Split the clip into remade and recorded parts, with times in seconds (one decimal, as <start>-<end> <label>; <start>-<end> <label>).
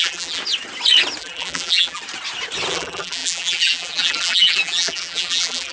0.0-0.4 remade; 0.4-1.2 recorded; 1.2-2.0 remade; 2.0-2.7 recorded; 2.7-5.7 remade